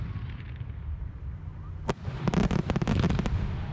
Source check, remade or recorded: recorded